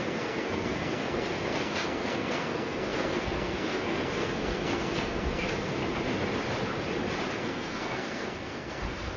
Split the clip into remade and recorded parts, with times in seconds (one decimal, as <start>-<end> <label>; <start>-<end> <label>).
0.0-5.8 remade; 5.8-7.3 recorded; 7.3-9.2 remade